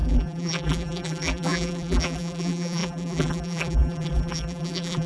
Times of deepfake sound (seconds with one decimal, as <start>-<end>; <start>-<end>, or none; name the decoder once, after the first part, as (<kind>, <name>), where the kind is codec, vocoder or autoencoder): 0.0-5.1 (vocoder, BigVGAN v2)